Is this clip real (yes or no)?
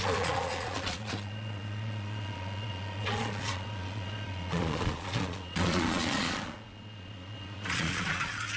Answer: no